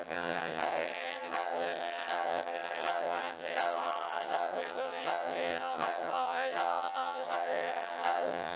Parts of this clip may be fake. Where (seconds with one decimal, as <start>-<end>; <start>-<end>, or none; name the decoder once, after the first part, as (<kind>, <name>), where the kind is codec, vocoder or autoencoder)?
0.0-8.6 (vocoder, HiFi-GAN)